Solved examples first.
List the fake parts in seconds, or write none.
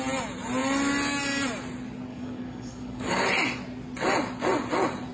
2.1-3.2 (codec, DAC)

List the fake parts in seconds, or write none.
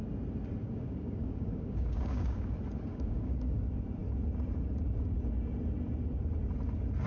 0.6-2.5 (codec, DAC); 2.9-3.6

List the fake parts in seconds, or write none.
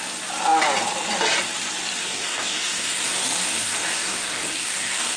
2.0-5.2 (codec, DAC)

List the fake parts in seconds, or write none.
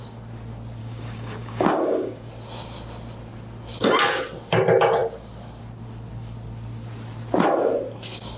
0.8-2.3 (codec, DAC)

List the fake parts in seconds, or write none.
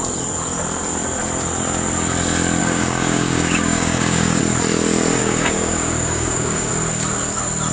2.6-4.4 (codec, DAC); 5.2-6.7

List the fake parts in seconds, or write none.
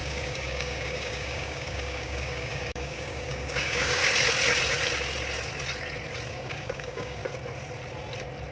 0.0-4.0 (codec, DAC); 6.3-7.2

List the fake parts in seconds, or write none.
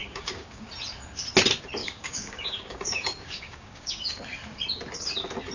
0.0-0.7 (codec, DAC); 1.8-4.2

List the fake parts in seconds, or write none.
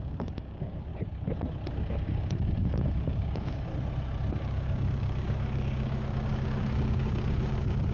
0.0-0.9 (codec, DAC); 1.7-3.7; 4.4-7.9